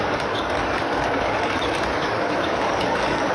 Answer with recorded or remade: remade